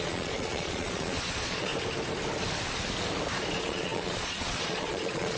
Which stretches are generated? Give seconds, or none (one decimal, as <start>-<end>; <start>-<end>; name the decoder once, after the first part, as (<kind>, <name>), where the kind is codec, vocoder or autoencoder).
0.0-1.7 (vocoder, Vocos); 3.5-5.4